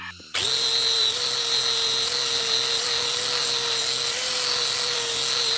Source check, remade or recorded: recorded